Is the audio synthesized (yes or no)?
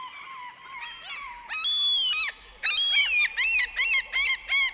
no